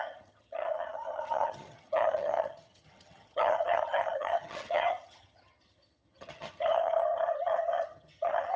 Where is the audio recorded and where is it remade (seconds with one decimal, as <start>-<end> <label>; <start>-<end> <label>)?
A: 0.0-8.6 remade